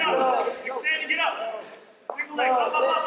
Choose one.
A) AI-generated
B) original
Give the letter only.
B